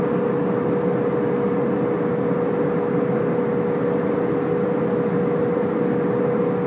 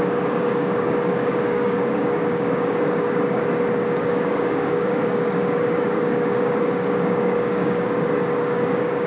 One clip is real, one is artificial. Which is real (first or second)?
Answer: first